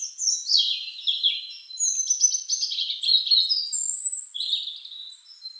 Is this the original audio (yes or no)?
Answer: yes